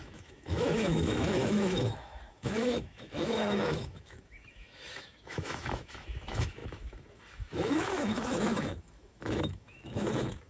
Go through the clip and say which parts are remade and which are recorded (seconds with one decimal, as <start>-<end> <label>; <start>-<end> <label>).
0.0-10.5 remade